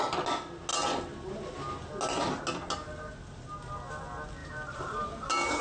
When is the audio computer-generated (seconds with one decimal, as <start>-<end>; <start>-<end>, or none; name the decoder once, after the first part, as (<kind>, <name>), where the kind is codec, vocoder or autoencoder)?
4.4-5.6 (vocoder, BigVGAN v2)